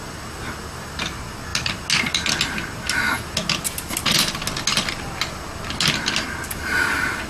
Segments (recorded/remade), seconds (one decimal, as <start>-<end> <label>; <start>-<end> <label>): 0.0-7.3 recorded